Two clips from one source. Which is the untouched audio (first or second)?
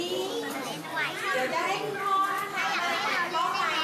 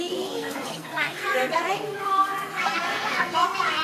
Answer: first